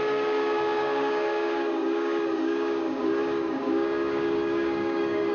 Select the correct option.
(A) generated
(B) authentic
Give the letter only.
A